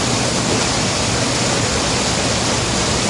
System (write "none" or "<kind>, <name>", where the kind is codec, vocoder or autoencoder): none